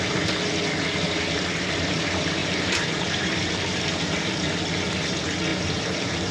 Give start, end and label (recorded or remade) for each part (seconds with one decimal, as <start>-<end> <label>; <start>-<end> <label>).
0.0-2.4 recorded; 2.4-4.0 remade; 4.0-5.5 recorded; 5.5-6.3 remade